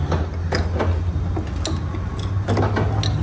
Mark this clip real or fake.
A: real